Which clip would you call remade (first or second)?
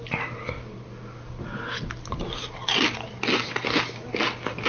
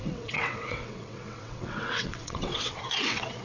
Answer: second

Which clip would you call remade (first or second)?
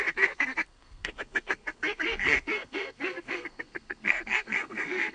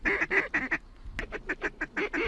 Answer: first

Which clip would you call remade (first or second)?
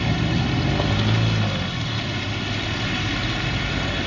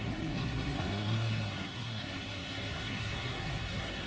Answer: second